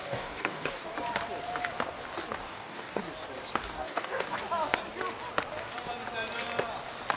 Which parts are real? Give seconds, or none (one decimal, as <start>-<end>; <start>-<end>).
0.9-2.4; 3.0-3.6; 4.4-7.2